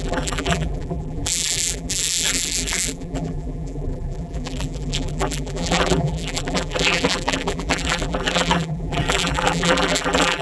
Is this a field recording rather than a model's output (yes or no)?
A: no